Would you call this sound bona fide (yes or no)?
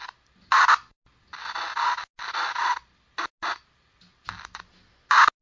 yes